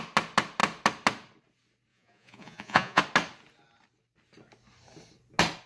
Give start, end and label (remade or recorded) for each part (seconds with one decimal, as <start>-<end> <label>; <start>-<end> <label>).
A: 0.0-1.9 recorded; 1.9-3.0 remade; 3.0-5.7 recorded